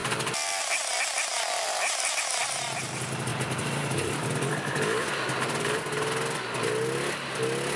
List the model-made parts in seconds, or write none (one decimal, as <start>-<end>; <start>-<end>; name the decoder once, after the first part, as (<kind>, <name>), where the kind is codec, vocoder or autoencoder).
0.0-0.6 (vocoder, BigVGAN v2); 3.3-5.8